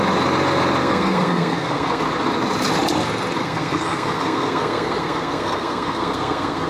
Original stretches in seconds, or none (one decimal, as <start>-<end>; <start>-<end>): 0.0-0.8; 2.0-3.4